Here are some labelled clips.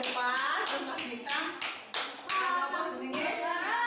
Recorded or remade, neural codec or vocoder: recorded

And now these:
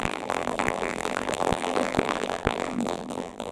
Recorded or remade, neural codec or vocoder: remade, vocoder, BigVGAN v2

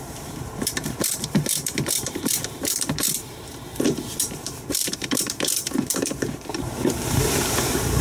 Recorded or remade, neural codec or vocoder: remade, vocoder, BigVGAN v2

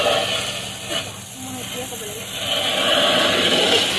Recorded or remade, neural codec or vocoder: recorded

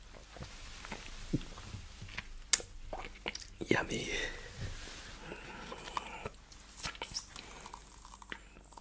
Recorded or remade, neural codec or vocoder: recorded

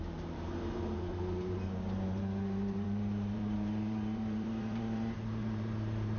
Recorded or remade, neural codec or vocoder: remade, vocoder, BigVGAN v2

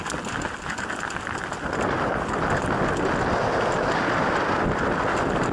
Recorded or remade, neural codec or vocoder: recorded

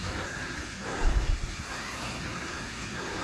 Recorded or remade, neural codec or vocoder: remade, codec, SNAC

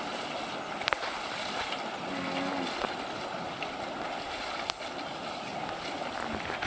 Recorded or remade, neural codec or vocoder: recorded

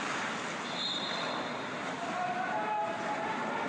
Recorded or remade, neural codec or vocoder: recorded